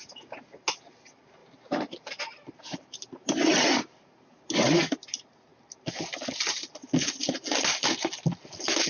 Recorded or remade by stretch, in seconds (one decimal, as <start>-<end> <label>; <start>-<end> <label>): 0.0-1.4 recorded; 1.4-4.8 remade; 4.8-8.9 recorded